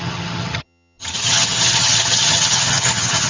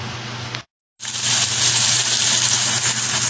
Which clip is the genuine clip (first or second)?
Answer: second